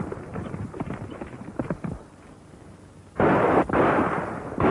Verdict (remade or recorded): recorded